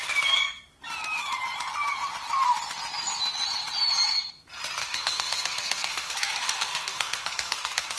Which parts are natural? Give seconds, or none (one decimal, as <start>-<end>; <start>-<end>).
0.0-4.8